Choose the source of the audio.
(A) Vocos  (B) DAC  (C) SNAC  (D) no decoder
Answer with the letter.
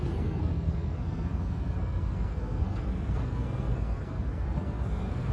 C